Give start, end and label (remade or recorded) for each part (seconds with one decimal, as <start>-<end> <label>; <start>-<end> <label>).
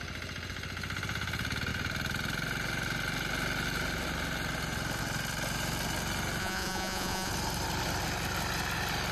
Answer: 0.0-6.4 recorded; 6.4-7.3 remade; 7.3-9.1 recorded